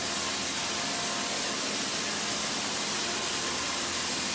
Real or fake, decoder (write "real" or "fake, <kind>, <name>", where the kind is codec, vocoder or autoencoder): real